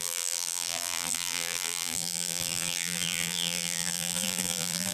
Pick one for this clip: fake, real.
fake